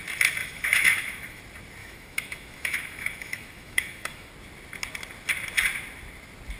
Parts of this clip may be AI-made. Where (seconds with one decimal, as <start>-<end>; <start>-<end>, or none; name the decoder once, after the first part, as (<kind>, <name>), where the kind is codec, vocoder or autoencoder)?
0.4-1.4 (autoencoder, DAC-VAE); 1.8-4.3